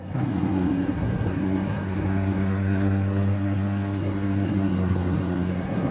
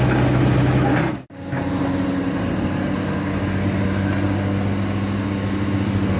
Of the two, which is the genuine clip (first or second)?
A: second